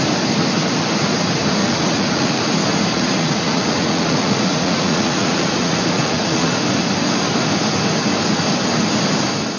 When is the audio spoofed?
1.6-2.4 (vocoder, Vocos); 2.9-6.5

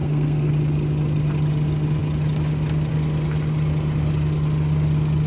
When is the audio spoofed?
0.0-0.5 (codec, SNAC)

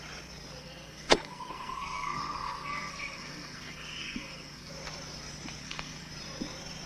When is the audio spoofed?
0.6-4.7 (codec, SNAC); 5.6-6.1

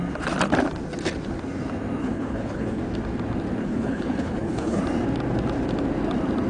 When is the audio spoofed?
2.0-2.8 (codec, HILCodec); 3.6-4.8

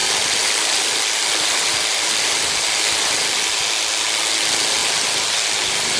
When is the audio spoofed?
0.0-3.6 (vocoder, BigVGAN v2); 4.8-6.0